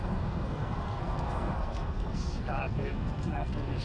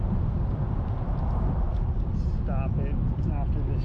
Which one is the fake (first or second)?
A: first